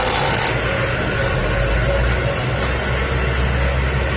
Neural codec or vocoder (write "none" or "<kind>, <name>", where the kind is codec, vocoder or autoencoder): none